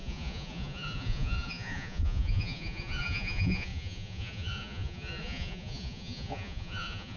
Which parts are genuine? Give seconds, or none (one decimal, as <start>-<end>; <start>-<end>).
none